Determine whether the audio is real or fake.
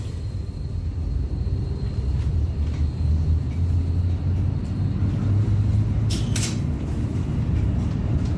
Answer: real